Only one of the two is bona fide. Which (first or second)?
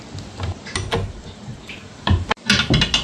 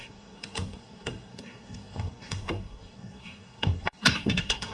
first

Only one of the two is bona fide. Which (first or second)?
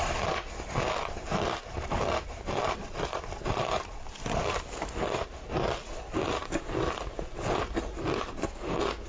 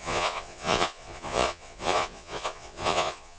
first